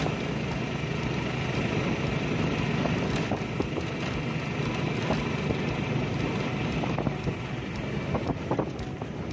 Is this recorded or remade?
recorded